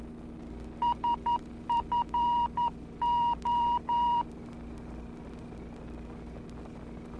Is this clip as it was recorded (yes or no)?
yes